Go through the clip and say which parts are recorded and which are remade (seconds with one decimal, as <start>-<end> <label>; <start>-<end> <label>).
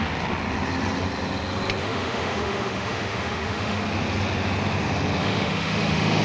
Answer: 0.0-1.8 recorded; 1.8-3.8 remade; 3.8-5.2 recorded; 5.2-6.2 remade